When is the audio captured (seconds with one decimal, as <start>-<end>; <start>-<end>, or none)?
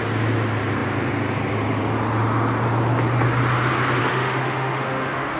0.0-4.0